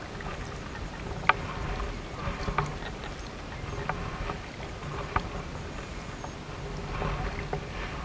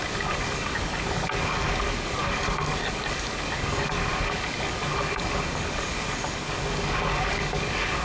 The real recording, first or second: first